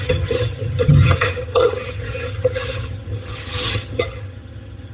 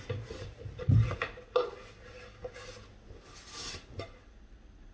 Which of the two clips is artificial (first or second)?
first